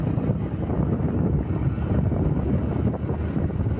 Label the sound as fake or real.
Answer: real